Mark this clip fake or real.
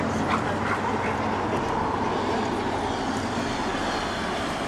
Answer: real